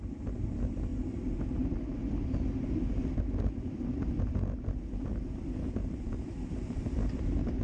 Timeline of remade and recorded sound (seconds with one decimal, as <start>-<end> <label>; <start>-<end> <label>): 0.0-7.6 recorded